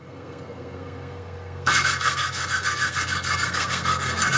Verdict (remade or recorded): remade